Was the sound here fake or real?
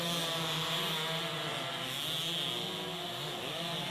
real